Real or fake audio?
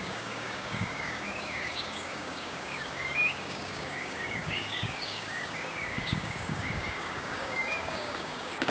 fake